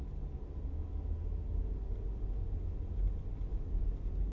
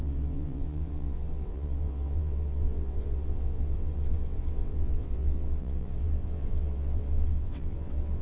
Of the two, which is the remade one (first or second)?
second